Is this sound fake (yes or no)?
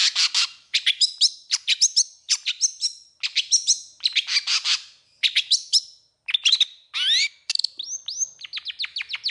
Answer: no